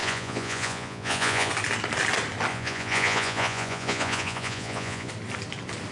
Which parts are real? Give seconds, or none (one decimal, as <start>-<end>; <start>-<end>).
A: 1.5-2.5; 5.1-5.9